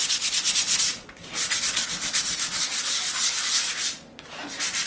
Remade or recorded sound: recorded